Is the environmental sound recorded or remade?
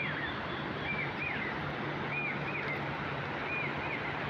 recorded